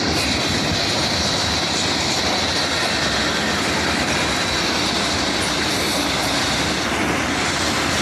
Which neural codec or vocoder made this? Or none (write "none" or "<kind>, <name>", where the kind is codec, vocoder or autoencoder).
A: none